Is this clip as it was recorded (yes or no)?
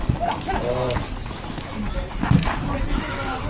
yes